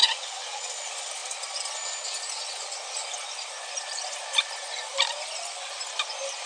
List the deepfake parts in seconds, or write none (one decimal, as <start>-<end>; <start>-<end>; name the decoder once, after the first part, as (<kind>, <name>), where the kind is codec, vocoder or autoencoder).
0.0-0.7 (vocoder, WaveNeXt)